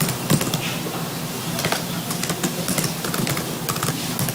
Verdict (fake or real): real